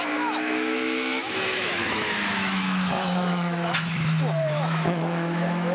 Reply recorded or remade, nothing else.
remade